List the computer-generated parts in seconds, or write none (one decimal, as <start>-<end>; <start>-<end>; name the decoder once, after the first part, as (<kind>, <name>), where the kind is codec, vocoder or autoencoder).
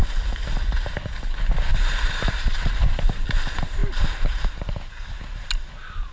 1.7-2.7 (vocoder, BigVGAN v2)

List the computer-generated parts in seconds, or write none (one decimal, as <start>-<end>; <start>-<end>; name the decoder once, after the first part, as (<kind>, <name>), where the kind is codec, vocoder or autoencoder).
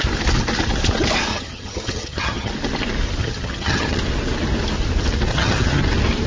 1.3-2.5 (vocoder, HiFi-GAN); 3.2-4.0; 5.3-5.8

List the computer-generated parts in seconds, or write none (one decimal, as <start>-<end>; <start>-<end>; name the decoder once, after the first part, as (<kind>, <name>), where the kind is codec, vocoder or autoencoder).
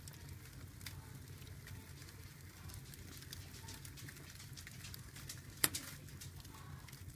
2.0-2.7 (vocoder, BigVGAN v2)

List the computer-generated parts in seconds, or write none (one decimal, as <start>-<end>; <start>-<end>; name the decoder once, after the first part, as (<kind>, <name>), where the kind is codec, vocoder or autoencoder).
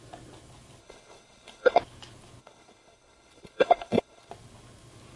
0.8-1.8 (codec, HILCodec); 2.4-4.3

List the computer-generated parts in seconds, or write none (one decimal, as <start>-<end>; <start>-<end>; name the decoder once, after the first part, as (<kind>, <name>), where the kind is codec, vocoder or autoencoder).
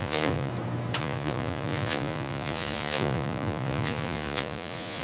0.0-0.5 (vocoder, Vocos); 1.0-5.0